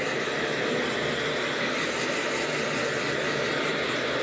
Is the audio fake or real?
real